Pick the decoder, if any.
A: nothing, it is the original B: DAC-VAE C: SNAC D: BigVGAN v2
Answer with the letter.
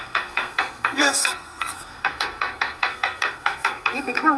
C